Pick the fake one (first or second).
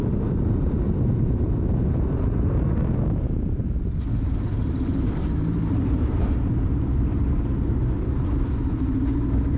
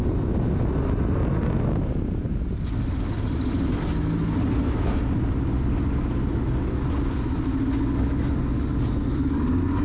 first